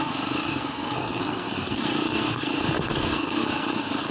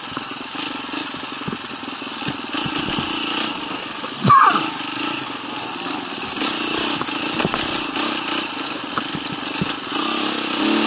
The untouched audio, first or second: second